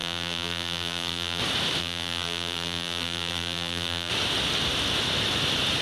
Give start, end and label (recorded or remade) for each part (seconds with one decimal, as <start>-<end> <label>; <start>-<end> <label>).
0.0-1.4 remade; 1.4-1.8 recorded; 1.8-4.1 remade; 4.1-5.8 recorded

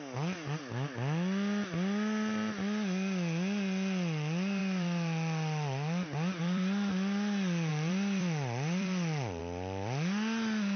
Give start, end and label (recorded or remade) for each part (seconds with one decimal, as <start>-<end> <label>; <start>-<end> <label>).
0.0-4.6 recorded; 4.6-6.9 remade; 6.9-7.7 recorded; 7.7-9.4 remade; 9.4-10.8 recorded

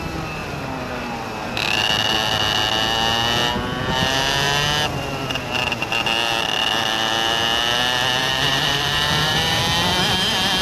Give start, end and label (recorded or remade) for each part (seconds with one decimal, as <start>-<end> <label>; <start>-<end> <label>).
0.0-8.2 recorded; 8.2-9.6 remade; 9.6-10.6 recorded

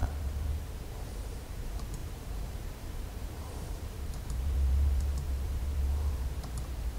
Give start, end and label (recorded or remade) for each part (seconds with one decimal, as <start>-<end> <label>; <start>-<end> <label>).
0.0-7.0 remade

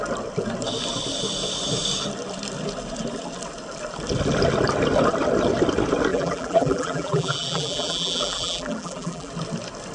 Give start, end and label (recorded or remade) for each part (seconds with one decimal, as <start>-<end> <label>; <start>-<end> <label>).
0.0-6.1 recorded; 6.1-9.3 remade; 9.3-9.9 recorded

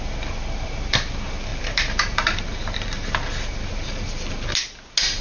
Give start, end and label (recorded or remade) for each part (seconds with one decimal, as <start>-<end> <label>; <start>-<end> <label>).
0.0-1.5 recorded; 1.5-4.3 remade; 4.3-5.2 recorded

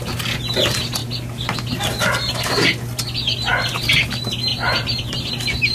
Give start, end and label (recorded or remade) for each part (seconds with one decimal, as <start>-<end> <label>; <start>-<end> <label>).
0.0-4.5 recorded; 4.5-5.3 remade; 5.3-5.7 recorded

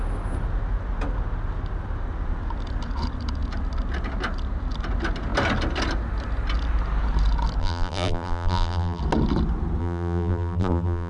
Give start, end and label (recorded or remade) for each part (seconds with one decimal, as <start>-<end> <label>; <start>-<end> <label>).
0.0-7.6 recorded; 7.6-9.0 remade; 9.0-9.8 recorded; 9.8-11.1 remade